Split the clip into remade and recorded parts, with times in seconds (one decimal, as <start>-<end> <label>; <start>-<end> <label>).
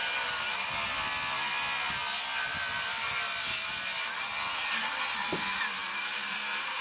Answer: 0.0-5.8 recorded; 5.8-6.8 remade